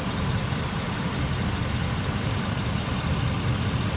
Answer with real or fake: fake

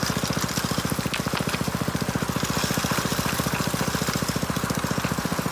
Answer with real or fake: real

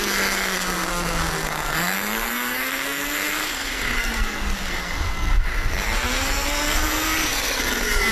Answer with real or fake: fake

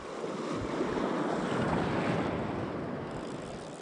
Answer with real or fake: real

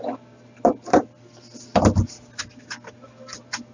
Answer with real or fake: real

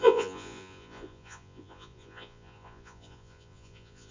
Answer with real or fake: fake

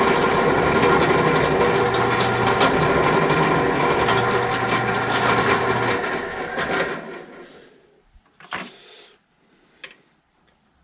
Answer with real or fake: real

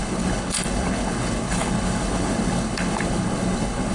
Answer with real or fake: fake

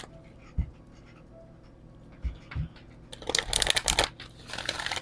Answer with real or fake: real